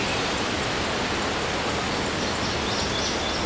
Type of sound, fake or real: real